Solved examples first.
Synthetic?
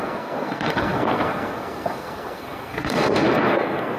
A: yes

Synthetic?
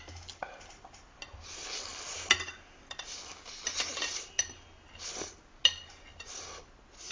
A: no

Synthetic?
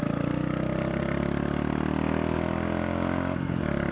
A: no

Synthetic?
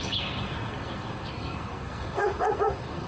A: yes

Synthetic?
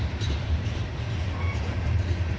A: yes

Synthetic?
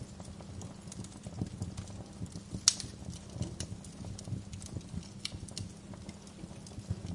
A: no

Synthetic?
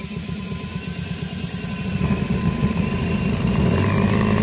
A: no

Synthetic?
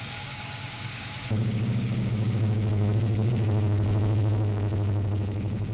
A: yes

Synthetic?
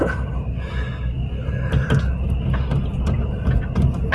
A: no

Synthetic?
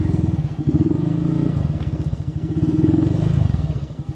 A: yes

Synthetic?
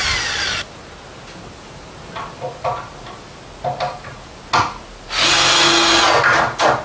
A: no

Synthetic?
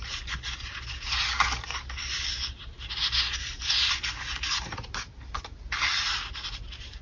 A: no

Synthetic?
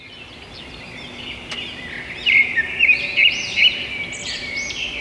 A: no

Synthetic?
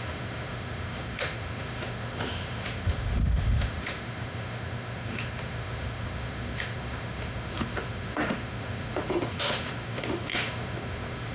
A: yes